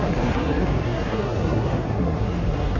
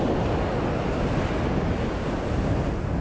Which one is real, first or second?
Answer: second